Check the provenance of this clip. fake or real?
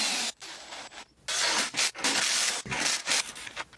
real